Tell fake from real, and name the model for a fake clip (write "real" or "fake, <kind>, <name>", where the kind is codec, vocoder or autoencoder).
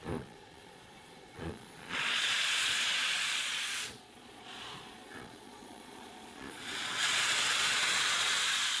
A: fake, vocoder, Vocos